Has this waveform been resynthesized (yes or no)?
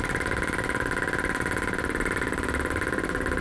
no